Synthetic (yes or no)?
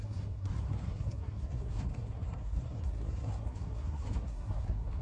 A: yes